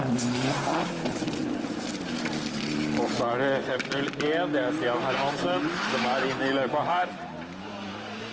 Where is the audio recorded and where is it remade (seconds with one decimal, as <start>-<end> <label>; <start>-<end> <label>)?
0.0-8.3 recorded